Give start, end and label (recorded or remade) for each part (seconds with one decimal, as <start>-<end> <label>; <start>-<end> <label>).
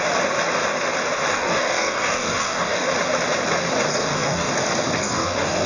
0.0-1.3 recorded; 1.3-2.9 remade; 2.9-3.9 recorded; 3.9-4.5 remade; 4.5-5.0 recorded; 5.0-5.7 remade